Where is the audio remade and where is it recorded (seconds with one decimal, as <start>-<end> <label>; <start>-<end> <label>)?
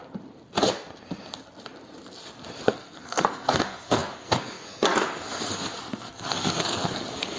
0.0-2.6 recorded; 2.6-7.4 remade